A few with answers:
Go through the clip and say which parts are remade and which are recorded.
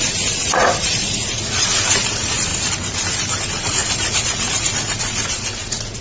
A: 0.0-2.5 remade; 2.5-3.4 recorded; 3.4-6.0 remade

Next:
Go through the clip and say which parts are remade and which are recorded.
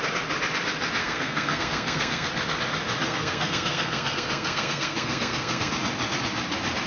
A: 0.0-1.0 recorded; 1.0-2.3 remade; 2.3-3.0 recorded; 3.0-5.7 remade; 5.7-6.9 recorded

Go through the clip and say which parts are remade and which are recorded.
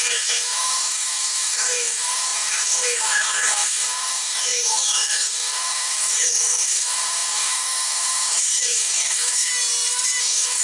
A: 0.0-9.5 remade; 9.5-10.2 recorded; 10.2-10.6 remade